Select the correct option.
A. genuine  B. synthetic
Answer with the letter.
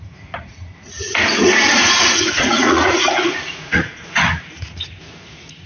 B